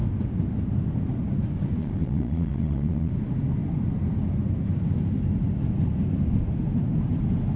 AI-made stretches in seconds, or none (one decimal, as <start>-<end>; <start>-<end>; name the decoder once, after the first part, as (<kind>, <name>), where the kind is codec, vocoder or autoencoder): 1.8-3.1 (vocoder, Vocos)